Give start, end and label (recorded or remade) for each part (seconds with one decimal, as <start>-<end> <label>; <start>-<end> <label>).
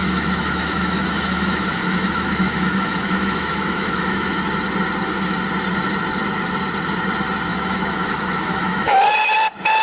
0.0-4.3 remade; 4.3-7.5 recorded; 7.5-9.1 remade; 9.1-9.8 recorded